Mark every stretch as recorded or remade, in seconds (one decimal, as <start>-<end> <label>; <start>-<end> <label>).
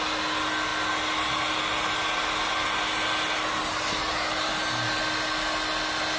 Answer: 0.0-6.2 recorded